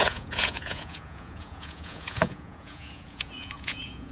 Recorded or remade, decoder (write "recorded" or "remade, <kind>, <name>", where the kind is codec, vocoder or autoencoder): remade, vocoder, Vocos